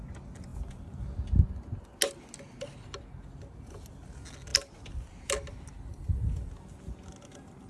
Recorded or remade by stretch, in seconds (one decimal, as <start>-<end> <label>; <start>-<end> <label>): 0.0-7.7 recorded